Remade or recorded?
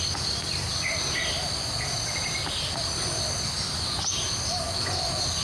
recorded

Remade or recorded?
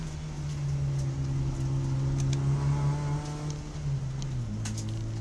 recorded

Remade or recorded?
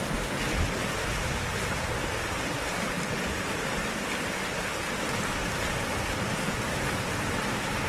recorded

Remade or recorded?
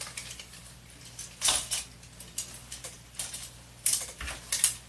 recorded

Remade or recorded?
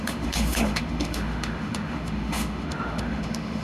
remade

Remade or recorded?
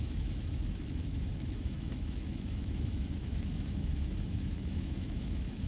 remade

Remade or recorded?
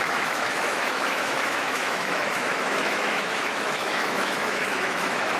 remade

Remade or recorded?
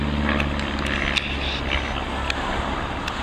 recorded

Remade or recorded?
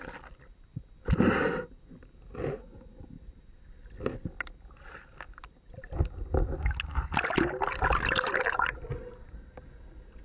recorded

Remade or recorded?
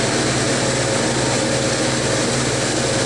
recorded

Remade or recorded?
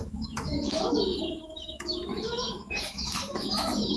remade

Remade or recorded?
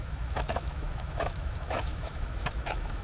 remade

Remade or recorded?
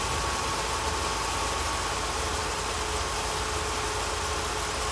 recorded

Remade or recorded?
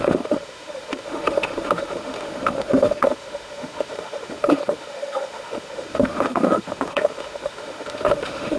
remade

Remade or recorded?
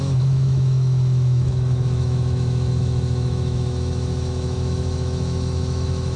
remade